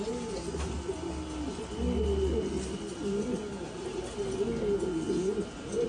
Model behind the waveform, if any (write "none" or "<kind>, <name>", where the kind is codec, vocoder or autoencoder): none